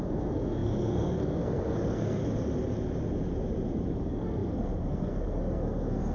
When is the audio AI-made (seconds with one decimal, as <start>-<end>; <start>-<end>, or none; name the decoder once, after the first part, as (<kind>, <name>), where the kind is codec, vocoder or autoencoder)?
0.0-2.2 (codec, SNAC); 3.9-6.1